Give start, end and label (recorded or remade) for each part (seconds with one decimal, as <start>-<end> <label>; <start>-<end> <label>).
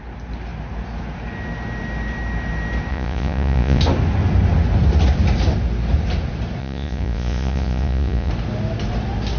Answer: 0.0-2.9 recorded; 2.9-3.8 remade; 3.8-6.6 recorded; 6.6-8.3 remade; 8.3-9.4 recorded